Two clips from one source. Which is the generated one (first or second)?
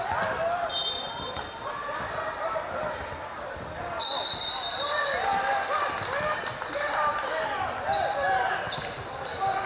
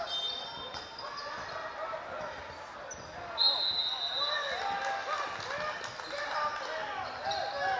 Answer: first